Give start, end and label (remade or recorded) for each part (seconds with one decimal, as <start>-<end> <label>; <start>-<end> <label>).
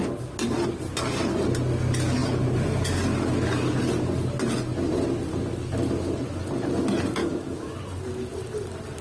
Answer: 0.0-7.2 recorded; 7.2-7.8 remade; 7.8-9.0 recorded